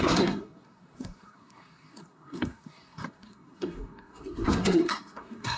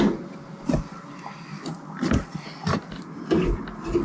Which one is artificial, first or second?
first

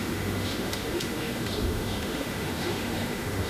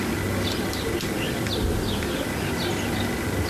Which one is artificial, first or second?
first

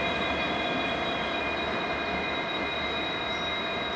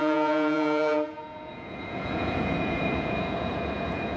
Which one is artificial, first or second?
second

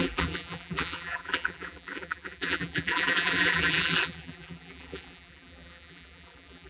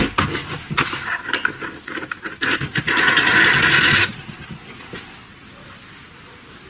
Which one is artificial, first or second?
first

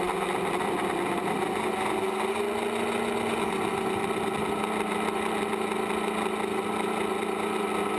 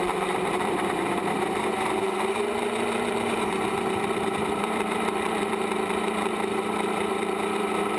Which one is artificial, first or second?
second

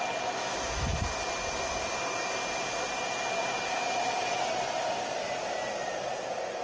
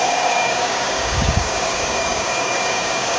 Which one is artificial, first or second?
second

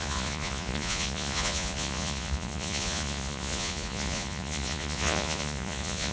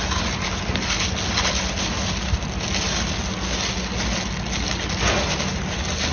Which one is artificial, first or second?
first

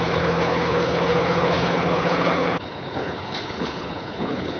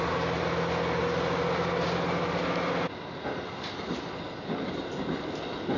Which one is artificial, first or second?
first